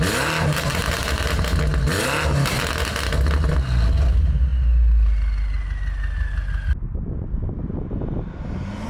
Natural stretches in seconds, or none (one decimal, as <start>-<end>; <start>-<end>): 0.0-8.9